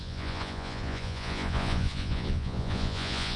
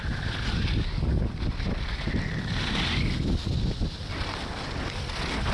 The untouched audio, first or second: second